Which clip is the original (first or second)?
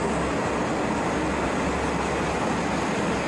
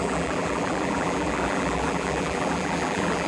first